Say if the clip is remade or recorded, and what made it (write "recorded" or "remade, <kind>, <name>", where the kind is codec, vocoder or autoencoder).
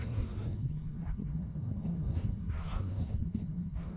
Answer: remade, codec, SNAC